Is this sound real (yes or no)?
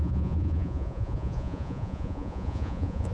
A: no